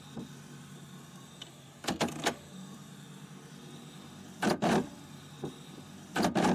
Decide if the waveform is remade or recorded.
recorded